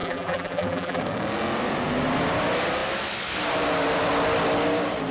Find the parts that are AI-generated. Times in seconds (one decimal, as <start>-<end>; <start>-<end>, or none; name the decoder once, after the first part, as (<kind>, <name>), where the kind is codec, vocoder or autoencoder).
0.0-1.0 (vocoder, BigVGAN v2)